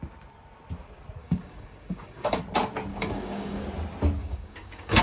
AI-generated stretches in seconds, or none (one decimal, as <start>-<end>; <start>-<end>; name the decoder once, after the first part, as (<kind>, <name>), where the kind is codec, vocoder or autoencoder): 1.2-2.4 (codec, DAC); 2.9-3.6; 4.2-5.0